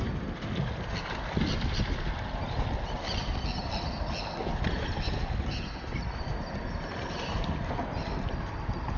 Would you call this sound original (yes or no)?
yes